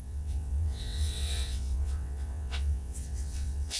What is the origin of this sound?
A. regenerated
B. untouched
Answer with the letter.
A